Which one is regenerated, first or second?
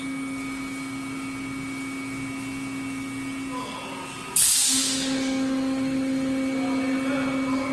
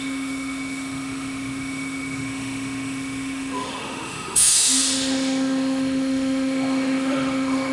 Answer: second